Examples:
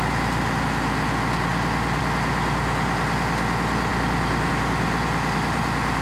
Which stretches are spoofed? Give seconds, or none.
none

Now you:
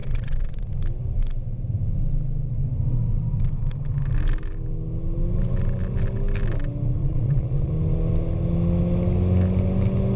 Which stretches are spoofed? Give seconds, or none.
0.0-0.7 (vocoder, Vocos); 7.0-7.7